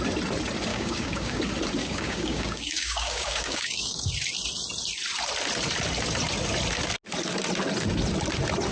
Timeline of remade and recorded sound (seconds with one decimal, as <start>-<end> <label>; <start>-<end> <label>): 0.0-0.7 recorded; 0.7-1.4 remade; 1.4-1.8 recorded; 1.8-4.1 remade; 4.1-8.7 recorded